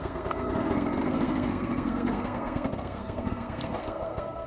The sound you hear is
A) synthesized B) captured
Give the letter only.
A